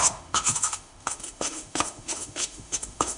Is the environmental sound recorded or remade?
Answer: remade